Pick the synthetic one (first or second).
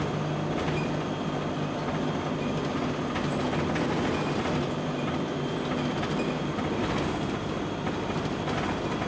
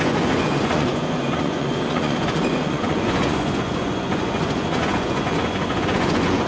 second